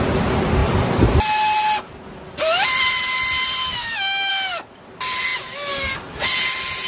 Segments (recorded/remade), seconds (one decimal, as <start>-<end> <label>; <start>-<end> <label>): 0.0-3.6 recorded; 3.6-4.3 remade; 4.3-6.9 recorded